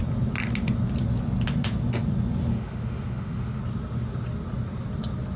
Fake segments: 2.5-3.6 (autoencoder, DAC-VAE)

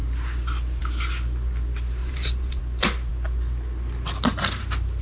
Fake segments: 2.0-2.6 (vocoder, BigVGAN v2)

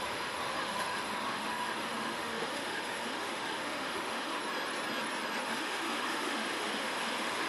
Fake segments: 0.0-4.4 (autoencoder, DAC-VAE); 5.4-7.5